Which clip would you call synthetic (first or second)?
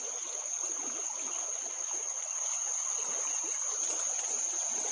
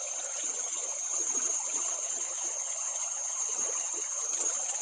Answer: second